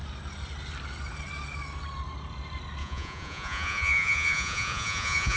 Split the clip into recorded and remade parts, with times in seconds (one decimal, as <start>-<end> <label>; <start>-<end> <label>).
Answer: 0.0-2.8 recorded; 2.8-5.4 remade